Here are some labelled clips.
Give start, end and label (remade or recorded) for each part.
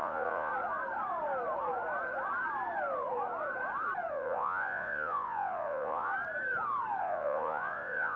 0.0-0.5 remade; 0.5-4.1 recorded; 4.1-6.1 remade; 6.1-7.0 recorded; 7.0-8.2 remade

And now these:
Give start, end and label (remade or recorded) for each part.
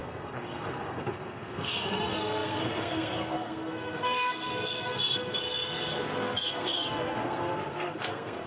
0.0-8.5 remade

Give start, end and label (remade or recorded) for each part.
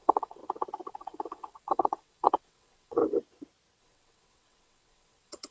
0.0-0.4 remade; 0.4-0.9 recorded; 0.9-3.0 remade; 3.0-3.8 recorded; 3.8-5.5 remade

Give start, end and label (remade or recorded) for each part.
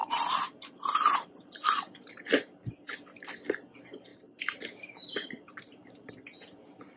0.0-2.1 remade; 2.1-4.1 recorded; 4.1-6.1 remade; 6.1-7.0 recorded